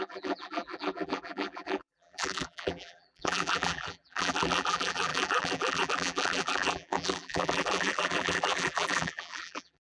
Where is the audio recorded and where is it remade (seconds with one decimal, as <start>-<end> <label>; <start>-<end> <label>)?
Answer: 0.0-9.9 remade